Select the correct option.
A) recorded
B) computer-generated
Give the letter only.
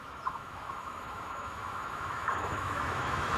B